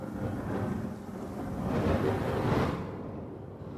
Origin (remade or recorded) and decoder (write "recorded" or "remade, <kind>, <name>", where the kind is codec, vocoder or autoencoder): remade, vocoder, BigVGAN v2